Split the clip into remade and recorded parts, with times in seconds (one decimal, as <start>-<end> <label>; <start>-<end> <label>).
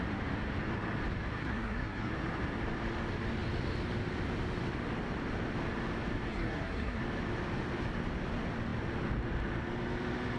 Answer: 0.0-1.4 recorded; 1.4-2.1 remade; 2.1-6.3 recorded; 6.3-7.0 remade; 7.0-10.4 recorded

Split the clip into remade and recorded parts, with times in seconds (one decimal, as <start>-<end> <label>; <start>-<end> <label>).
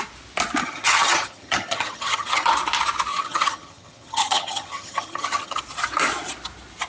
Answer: 0.0-0.6 recorded; 0.6-2.5 remade; 2.5-3.1 recorded; 3.1-5.6 remade; 5.6-6.9 recorded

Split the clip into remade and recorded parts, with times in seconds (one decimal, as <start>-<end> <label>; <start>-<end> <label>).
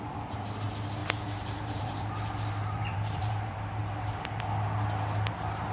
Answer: 0.0-1.0 recorded; 1.0-4.4 remade; 4.4-5.7 recorded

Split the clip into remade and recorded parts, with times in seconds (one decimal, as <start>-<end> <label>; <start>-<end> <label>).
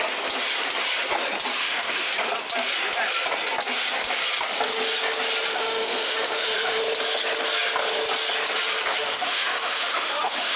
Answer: 0.0-1.6 recorded; 1.6-2.1 remade; 2.1-5.5 recorded; 5.5-6.8 remade; 6.8-8.9 recorded; 8.9-10.6 remade